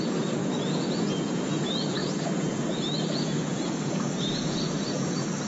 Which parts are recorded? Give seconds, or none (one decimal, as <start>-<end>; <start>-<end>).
none